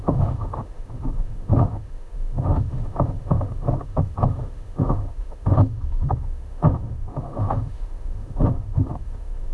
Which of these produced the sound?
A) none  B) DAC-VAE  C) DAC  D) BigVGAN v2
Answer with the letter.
B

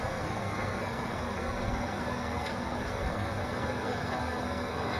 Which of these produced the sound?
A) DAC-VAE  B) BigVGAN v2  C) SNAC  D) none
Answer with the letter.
C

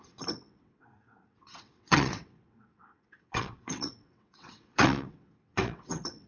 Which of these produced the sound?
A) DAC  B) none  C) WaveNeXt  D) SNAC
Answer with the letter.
C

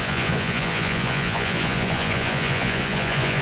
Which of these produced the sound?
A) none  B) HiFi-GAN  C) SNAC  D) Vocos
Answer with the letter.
D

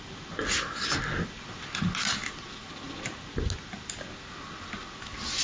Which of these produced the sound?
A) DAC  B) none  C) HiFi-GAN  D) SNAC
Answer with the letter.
B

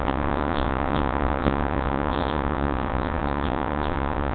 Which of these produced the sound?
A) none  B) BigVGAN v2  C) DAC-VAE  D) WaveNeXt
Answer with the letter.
D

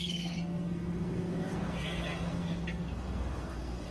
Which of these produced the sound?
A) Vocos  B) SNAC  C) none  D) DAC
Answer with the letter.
B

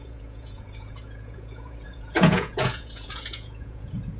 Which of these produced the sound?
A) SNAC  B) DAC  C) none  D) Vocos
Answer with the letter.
D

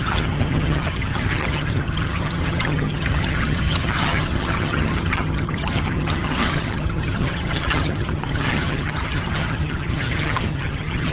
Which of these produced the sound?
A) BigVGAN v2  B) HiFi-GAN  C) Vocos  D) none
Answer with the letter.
B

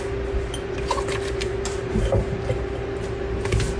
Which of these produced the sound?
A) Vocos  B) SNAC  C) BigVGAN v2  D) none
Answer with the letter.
D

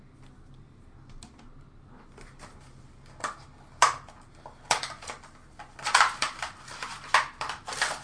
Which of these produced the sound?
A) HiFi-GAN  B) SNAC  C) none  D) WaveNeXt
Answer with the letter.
C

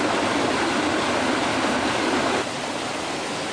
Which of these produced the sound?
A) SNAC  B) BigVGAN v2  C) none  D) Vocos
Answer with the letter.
C